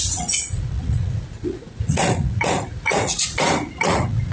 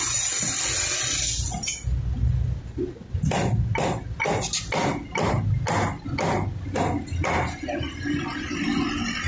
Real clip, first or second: second